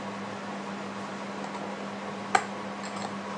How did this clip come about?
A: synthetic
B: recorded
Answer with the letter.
B